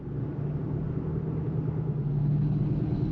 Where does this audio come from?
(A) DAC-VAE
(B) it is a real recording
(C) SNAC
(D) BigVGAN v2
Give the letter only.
B